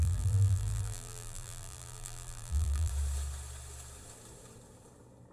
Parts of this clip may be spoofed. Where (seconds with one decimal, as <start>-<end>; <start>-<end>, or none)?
0.0-2.9